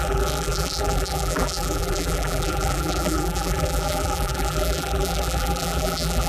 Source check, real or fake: fake